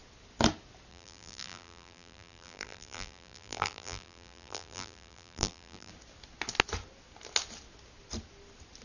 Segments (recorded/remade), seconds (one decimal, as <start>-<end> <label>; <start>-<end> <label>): 0.0-0.9 recorded; 0.9-5.9 remade; 5.9-8.8 recorded